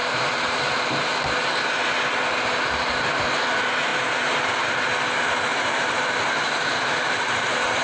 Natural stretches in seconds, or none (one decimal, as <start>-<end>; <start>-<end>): 0.7-3.9; 4.7-5.5